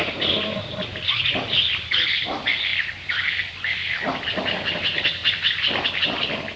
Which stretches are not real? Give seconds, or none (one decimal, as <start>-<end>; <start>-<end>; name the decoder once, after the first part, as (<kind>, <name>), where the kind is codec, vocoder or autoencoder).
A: none

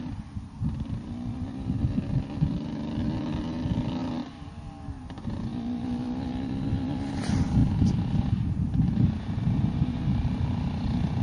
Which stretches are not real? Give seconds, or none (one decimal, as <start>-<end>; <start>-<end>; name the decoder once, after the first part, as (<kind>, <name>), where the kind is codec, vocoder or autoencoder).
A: none